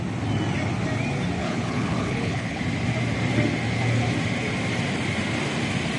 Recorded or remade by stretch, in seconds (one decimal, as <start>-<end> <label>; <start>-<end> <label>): 0.0-1.4 recorded; 1.4-2.6 remade; 2.6-6.0 recorded